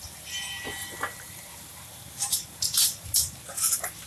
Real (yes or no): yes